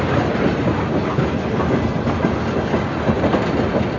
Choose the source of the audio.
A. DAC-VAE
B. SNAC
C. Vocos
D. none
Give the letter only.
D